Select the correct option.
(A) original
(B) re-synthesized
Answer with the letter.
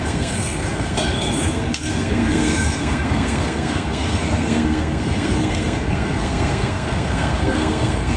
B